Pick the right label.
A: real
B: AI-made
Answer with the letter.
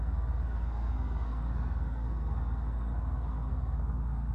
B